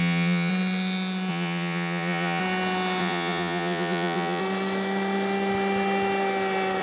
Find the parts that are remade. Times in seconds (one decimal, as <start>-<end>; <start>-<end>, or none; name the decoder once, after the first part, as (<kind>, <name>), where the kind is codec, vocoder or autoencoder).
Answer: 0.0-0.5 (vocoder, Vocos); 1.3-2.4; 3.0-4.4